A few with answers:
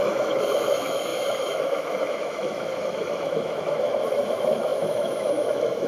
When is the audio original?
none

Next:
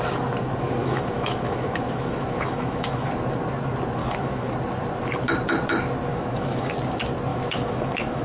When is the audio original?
0.0-0.8; 3.1-4.0; 4.5-6.1; 6.7-7.3

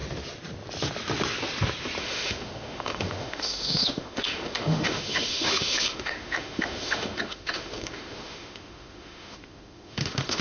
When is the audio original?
0.0-2.0

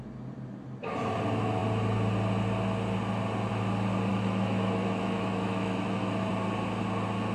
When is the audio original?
0.0-4.1; 6.3-7.3